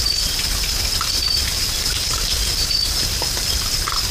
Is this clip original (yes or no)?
yes